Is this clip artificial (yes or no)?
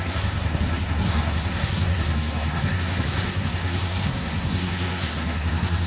yes